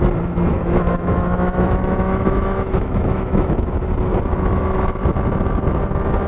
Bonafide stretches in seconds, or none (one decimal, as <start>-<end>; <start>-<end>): 0.0-0.5; 3.8-6.3